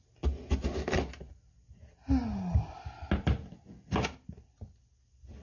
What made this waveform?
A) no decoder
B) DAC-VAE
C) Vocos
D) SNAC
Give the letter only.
A